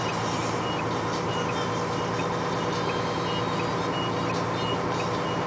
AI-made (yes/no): no